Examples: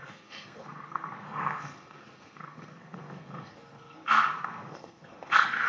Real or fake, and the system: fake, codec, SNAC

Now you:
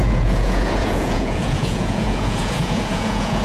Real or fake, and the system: fake, vocoder, Vocos